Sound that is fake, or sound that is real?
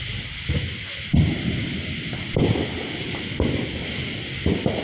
real